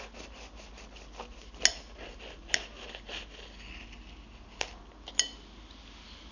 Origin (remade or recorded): recorded